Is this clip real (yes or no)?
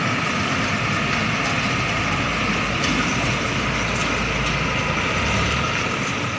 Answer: yes